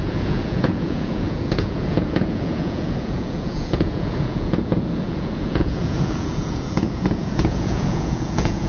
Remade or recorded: remade